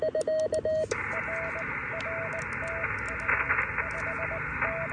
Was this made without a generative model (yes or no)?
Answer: yes